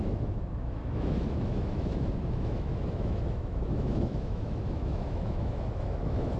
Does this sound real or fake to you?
fake